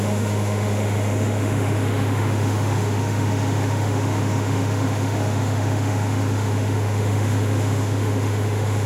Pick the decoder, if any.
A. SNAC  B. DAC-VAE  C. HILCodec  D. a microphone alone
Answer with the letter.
B